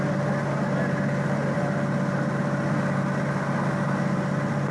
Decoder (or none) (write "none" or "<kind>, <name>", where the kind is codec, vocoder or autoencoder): none